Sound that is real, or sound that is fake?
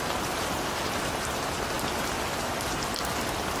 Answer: real